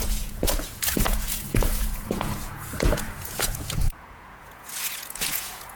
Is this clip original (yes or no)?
no